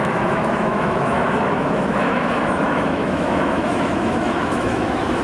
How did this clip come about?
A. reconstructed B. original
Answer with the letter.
A